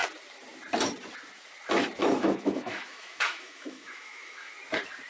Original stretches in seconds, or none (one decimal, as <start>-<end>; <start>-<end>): 0.0-2.0; 4.5-5.1